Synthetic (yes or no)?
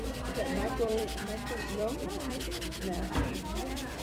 yes